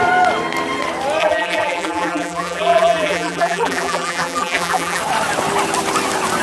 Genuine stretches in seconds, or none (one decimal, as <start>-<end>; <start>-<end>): 0.0-1.2; 5.0-6.4